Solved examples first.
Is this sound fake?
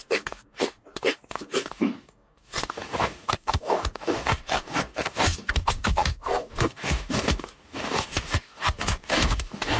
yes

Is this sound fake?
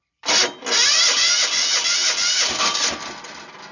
no